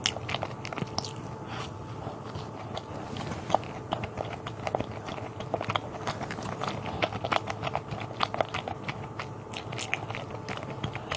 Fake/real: real